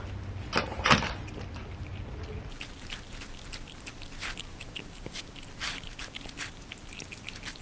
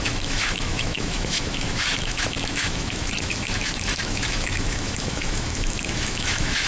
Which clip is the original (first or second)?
first